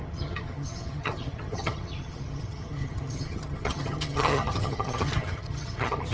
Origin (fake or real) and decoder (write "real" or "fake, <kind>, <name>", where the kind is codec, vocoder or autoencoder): fake, vocoder, HiFi-GAN